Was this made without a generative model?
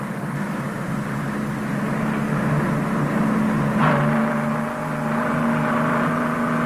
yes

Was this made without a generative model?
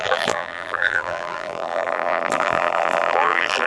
no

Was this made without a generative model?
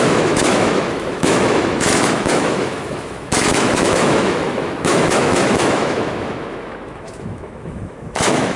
no